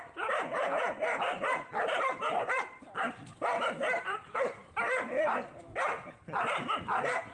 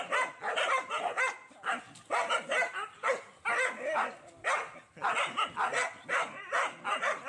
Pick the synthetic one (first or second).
first